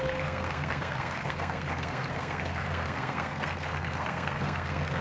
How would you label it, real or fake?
fake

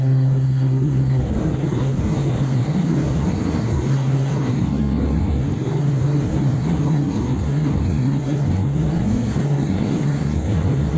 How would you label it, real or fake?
fake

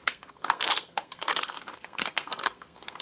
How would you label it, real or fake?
fake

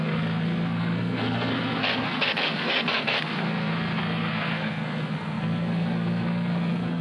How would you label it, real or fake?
fake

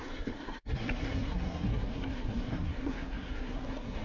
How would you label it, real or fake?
fake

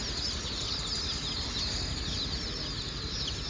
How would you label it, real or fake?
real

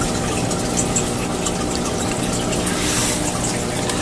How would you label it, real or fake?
real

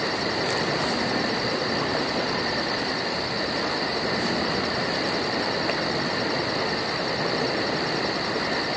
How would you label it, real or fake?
real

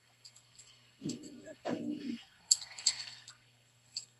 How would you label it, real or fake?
fake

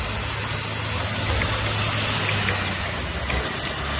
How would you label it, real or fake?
real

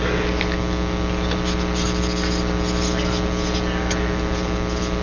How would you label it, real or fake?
real